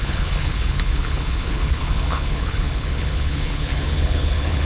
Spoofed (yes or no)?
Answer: yes